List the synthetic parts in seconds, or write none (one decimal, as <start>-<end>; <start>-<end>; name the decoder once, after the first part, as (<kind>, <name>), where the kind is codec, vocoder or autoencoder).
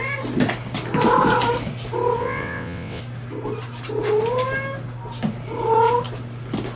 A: 2.2-3.0 (vocoder, WaveNeXt)